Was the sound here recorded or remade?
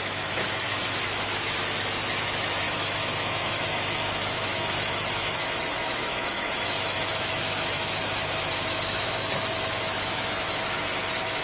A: remade